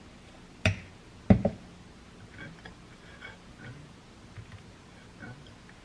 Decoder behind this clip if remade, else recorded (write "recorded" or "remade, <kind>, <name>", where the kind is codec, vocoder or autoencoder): recorded